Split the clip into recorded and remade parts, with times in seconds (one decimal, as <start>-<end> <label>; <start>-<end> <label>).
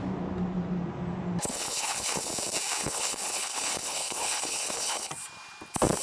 0.0-1.4 recorded; 1.4-2.2 remade; 2.2-2.8 recorded; 2.8-5.1 remade; 5.1-6.0 recorded